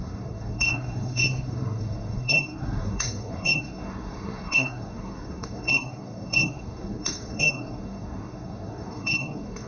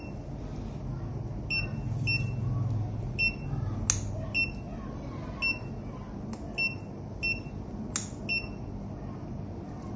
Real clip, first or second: second